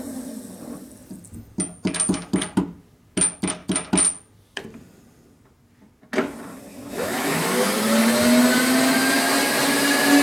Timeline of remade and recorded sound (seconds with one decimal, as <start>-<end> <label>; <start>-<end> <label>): 0.0-6.7 recorded; 6.7-7.7 remade; 7.7-10.2 recorded

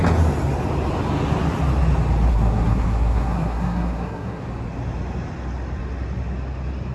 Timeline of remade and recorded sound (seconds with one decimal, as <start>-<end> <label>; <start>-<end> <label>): 0.0-2.3 recorded; 2.3-4.4 remade; 4.4-6.9 recorded

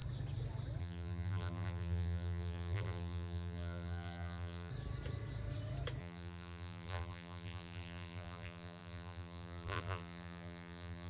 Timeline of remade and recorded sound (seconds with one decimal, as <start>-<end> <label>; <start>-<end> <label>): 0.0-0.8 recorded; 0.8-4.7 remade; 4.7-6.0 recorded; 6.0-11.1 remade

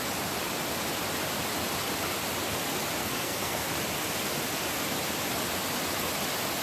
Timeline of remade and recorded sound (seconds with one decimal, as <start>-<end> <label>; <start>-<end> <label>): 0.0-3.0 recorded; 3.0-3.7 remade; 3.7-6.6 recorded

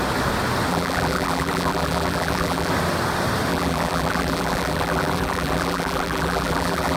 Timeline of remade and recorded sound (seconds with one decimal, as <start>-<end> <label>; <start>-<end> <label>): 0.0-0.7 recorded; 0.7-2.7 remade; 2.7-3.5 recorded; 3.5-7.0 remade

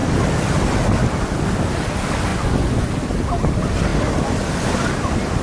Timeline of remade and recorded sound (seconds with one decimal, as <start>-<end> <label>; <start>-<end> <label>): 0.0-2.3 recorded; 2.3-2.9 remade; 2.9-5.4 recorded

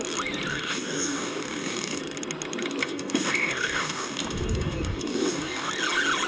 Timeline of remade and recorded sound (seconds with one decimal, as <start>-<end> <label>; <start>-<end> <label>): 0.0-0.5 recorded; 0.5-2.0 remade; 2.0-2.8 recorded; 2.8-5.7 remade; 5.7-6.3 recorded